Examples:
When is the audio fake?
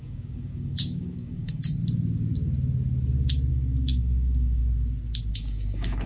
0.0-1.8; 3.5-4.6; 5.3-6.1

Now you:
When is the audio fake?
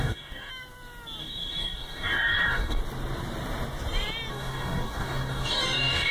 0.0-0.5; 1.2-2.8; 4.3-6.1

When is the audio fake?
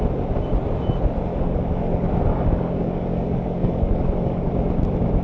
1.3-1.8; 2.3-4.5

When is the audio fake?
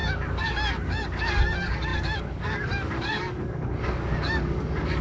0.0-5.0